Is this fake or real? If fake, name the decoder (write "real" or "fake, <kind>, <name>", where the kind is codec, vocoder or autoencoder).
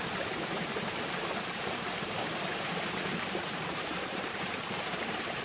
fake, vocoder, BigVGAN v2